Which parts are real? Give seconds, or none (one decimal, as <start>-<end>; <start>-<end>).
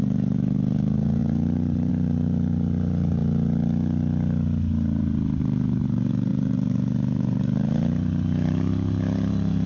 3.2-5.0